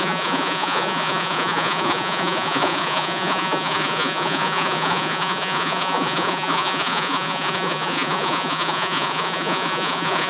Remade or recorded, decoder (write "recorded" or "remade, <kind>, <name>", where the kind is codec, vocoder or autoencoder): remade, vocoder, Vocos